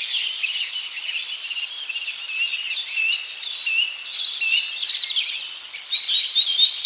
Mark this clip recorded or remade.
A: recorded